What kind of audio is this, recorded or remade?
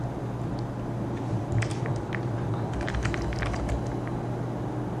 recorded